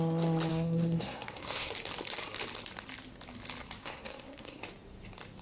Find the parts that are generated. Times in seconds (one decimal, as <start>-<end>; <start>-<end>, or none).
0.5-1.7; 3.8-4.6